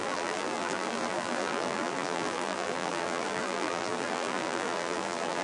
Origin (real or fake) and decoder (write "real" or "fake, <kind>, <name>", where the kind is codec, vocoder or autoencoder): fake, vocoder, BigVGAN v2